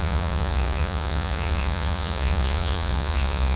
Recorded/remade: remade